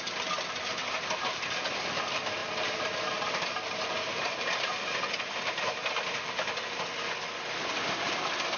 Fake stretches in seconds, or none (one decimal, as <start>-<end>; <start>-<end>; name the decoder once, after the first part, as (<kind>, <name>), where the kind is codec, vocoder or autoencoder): none